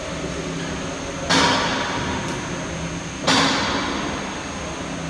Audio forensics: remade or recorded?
recorded